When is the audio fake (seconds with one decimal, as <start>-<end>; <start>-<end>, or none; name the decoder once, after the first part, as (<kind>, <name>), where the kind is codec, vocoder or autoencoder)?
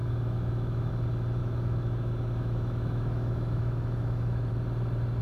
0.0-0.9 (autoencoder, DAC-VAE); 1.4-4.5